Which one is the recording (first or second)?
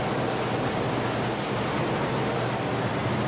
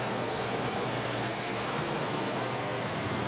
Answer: first